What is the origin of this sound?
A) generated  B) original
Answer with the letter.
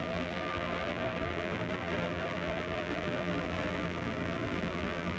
A